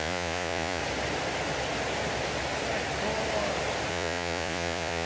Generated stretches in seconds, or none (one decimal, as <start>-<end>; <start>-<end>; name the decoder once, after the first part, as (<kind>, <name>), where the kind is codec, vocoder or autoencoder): 0.0-0.8 (vocoder, Vocos); 3.9-5.1